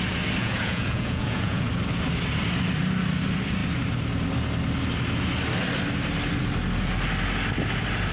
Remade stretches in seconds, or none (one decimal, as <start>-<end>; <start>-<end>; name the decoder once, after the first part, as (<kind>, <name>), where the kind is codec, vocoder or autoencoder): 0.4-1.6 (vocoder, Vocos)

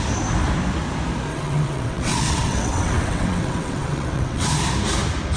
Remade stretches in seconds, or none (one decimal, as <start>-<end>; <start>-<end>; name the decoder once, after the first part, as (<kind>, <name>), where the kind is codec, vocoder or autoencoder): 1.3-4.5 (vocoder, WaveNeXt)

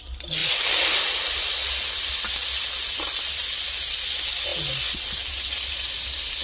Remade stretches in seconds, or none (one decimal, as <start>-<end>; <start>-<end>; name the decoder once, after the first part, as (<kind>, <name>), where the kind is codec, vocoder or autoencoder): none

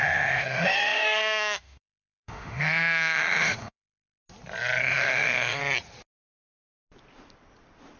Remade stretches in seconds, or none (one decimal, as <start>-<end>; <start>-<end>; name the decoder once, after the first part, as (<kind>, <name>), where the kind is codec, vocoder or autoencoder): 0.0-4.2 (autoencoder, DAC-VAE); 4.8-5.6

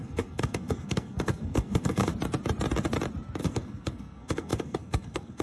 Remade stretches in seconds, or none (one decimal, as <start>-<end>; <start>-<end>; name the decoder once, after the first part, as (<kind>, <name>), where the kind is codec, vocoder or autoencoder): 0.0-2.1 (codec, SNAC); 3.4-5.4